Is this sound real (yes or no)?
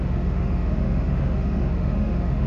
no